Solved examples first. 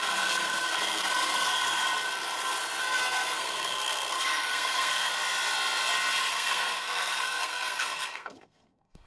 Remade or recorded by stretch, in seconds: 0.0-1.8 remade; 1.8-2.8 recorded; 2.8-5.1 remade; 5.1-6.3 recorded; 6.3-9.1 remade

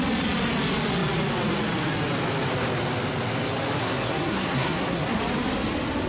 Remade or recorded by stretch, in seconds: 0.0-3.8 recorded; 3.8-5.2 remade; 5.2-6.1 recorded

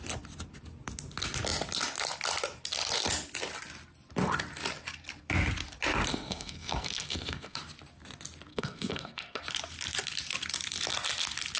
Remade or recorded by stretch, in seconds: 0.0-6.1 recorded; 6.1-7.6 remade; 7.6-8.5 recorded; 8.5-9.4 remade; 9.4-11.6 recorded

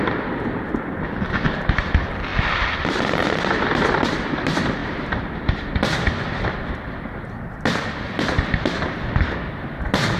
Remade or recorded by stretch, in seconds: 0.0-10.2 remade

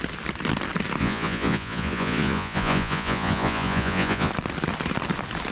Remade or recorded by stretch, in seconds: 0.0-1.0 recorded; 1.0-4.3 remade; 4.3-5.5 recorded

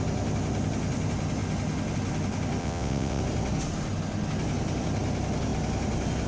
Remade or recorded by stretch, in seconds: 0.0-2.6 recorded; 2.6-3.2 remade; 3.2-6.3 recorded

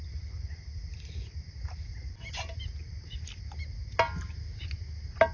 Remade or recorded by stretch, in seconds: 0.0-5.3 recorded